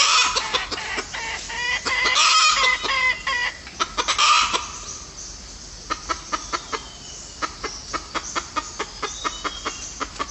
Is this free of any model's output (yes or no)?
yes